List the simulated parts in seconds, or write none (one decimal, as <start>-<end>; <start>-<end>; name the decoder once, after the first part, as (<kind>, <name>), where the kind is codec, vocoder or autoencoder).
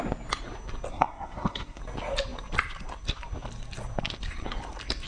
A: 0.9-1.8 (codec, SNAC)